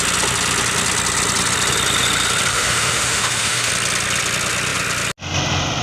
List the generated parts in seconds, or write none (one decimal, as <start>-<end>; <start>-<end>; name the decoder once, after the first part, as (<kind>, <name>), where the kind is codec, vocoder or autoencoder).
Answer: 2.5-3.7 (autoencoder, DAC-VAE)